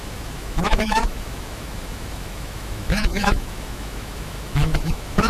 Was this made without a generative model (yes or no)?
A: no